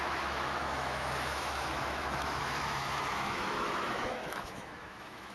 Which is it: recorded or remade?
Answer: remade